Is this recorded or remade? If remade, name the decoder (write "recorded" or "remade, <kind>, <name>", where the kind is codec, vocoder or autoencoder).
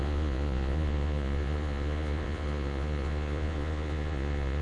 remade, vocoder, Vocos